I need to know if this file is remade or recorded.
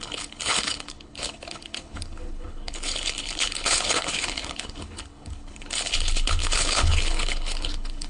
remade